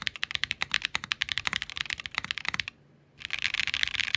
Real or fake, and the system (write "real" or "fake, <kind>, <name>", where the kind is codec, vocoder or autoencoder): real